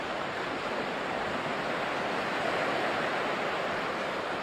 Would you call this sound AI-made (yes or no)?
yes